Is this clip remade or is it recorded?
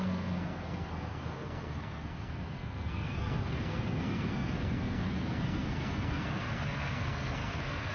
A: remade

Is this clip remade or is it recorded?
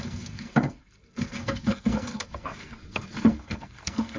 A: remade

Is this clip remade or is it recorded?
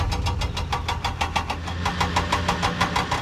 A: recorded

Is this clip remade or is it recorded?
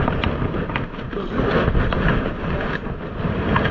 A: recorded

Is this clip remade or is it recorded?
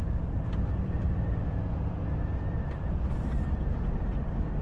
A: recorded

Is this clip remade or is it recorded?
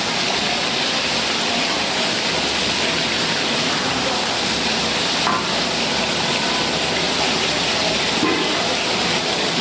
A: recorded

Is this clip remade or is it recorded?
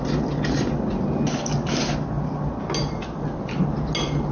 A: recorded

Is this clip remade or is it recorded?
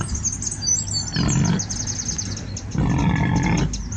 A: recorded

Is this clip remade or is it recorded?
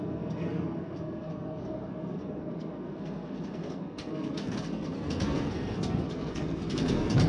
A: remade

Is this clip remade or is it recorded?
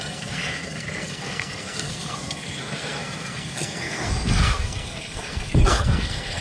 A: remade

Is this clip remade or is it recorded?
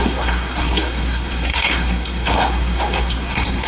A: remade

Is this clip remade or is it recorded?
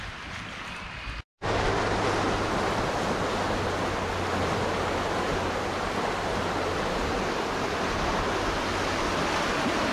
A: recorded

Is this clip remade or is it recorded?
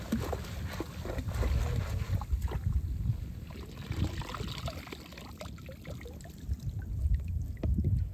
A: recorded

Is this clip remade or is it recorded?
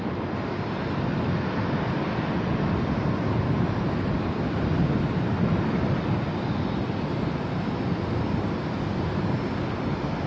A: recorded